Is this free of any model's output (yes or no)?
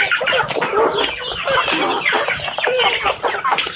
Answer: yes